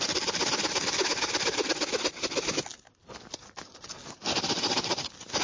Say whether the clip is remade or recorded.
recorded